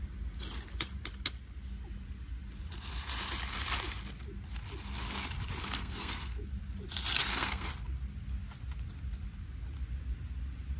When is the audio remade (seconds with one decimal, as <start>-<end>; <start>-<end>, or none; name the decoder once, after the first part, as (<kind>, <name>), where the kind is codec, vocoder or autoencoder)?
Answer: 5.6-6.5 (codec, SNAC); 7.2-7.7